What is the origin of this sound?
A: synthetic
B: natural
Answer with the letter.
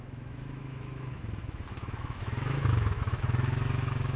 A